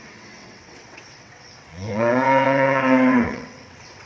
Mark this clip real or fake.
fake